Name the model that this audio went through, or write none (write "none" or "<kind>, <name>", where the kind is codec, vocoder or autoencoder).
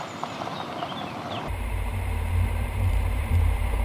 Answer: vocoder, BigVGAN v2